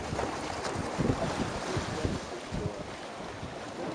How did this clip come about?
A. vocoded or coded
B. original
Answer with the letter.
B